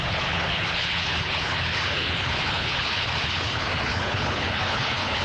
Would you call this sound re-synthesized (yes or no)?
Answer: yes